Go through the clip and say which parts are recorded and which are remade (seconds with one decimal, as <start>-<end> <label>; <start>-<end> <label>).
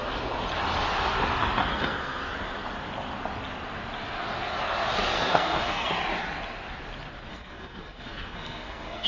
0.0-1.7 recorded; 1.7-2.2 remade; 2.2-5.1 recorded; 5.1-5.9 remade; 5.9-7.3 recorded; 7.3-9.1 remade